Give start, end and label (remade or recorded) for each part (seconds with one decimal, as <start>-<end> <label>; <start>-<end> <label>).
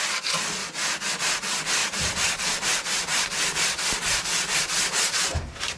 0.0-0.6 recorded; 0.6-1.1 remade; 1.1-1.8 recorded; 1.8-4.6 remade; 4.6-5.8 recorded